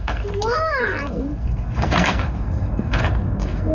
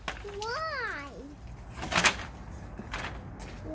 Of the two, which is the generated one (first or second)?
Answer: first